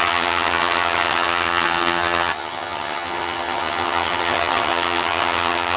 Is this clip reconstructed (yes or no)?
yes